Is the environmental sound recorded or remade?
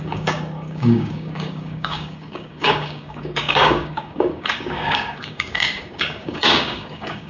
remade